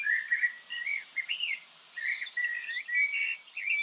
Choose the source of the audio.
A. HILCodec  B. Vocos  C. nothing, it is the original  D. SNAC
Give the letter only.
C